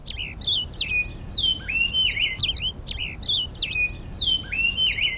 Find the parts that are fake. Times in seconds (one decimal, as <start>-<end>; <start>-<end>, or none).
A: none